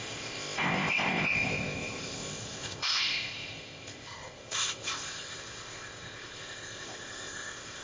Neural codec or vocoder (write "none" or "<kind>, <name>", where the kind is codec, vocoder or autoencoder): codec, ZipCodec